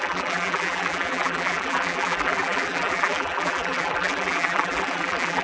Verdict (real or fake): fake